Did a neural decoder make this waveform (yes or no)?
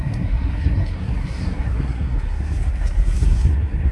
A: yes